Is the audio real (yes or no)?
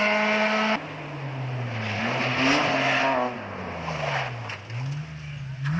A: yes